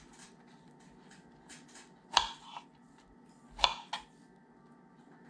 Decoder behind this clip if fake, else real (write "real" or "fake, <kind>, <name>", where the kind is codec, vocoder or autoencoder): real